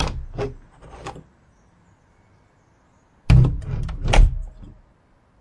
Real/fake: real